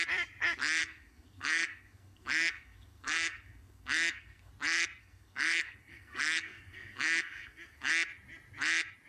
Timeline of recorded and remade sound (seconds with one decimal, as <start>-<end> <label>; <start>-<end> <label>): 0.0-0.8 recorded; 0.8-4.5 remade; 4.5-5.0 recorded; 5.0-7.9 remade; 7.9-9.1 recorded